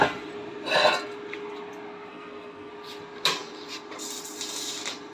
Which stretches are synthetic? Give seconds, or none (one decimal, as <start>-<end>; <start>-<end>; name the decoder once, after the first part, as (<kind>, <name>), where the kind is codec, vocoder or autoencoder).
2.1-2.7 (codec, SNAC)